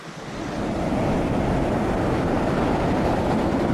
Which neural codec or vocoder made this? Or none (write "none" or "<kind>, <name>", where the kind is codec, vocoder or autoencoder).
none